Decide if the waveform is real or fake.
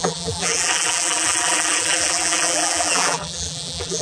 fake